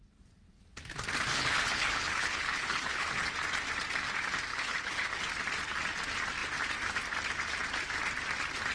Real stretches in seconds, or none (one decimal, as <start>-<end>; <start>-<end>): 0.0-1.3; 3.1-4.5; 5.2-8.7